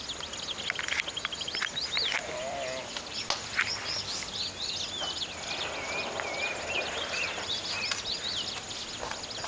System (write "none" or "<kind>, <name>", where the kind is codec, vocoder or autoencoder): none